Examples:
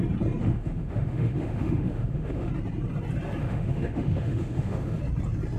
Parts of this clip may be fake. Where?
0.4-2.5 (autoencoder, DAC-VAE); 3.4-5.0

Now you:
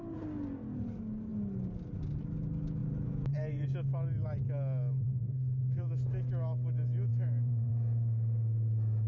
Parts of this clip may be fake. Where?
2.8-3.7 (vocoder, BigVGAN v2); 5.2-5.9; 7.1-7.7